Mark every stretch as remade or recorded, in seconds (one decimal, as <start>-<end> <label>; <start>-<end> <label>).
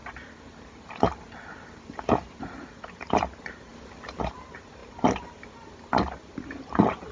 0.0-3.7 remade; 3.7-4.2 recorded; 4.2-7.1 remade